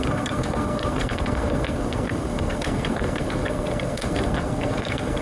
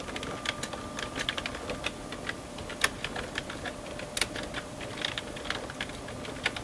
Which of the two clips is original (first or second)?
second